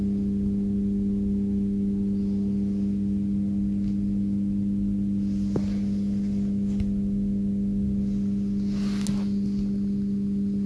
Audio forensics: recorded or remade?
recorded